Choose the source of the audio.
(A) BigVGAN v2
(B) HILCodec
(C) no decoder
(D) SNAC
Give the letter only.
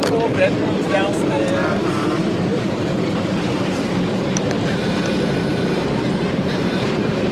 A